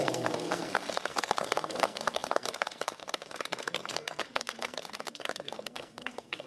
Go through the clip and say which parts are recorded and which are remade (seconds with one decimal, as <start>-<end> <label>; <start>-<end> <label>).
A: 0.0-6.5 remade